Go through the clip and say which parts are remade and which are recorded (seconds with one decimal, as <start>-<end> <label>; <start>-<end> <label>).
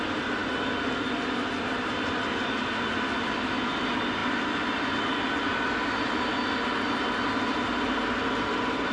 0.0-8.9 recorded